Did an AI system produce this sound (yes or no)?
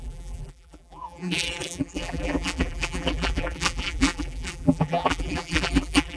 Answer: yes